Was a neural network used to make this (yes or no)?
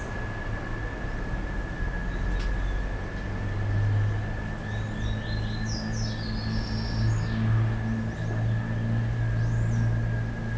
no